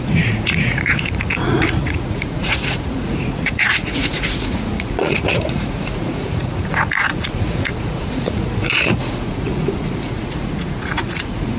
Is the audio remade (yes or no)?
yes